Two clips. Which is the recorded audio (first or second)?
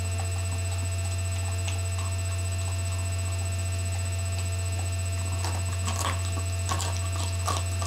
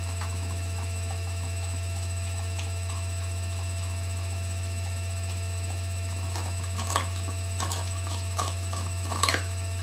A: first